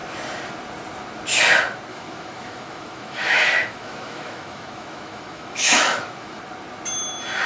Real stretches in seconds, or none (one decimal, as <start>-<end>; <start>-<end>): 0.0-1.9; 6.4-7.5